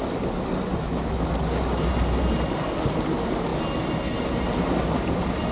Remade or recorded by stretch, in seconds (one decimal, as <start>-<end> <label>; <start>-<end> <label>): 0.0-0.7 recorded; 0.7-1.3 remade; 1.3-5.5 recorded